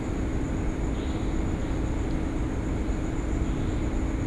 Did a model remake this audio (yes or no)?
no